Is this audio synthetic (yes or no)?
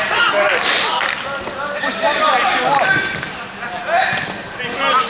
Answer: no